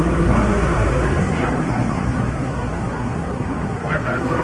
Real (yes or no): no